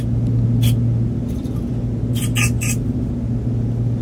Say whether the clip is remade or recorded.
recorded